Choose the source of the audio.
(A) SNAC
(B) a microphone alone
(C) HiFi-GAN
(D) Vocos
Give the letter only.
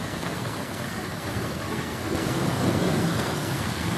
A